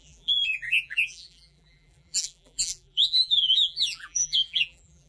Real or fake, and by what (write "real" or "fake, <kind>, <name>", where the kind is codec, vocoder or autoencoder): fake, vocoder, BigVGAN v2